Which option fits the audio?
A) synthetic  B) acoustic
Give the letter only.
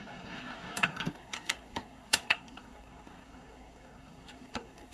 A